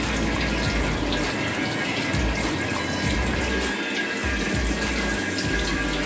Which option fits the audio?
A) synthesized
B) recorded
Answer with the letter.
B